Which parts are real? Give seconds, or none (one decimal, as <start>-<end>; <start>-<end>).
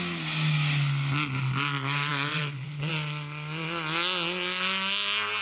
0.0-2.1; 2.9-5.4